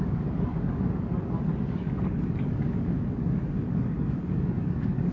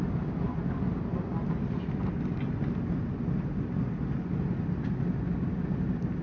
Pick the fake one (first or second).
first